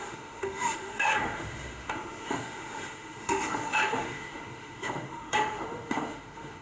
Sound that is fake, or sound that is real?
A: fake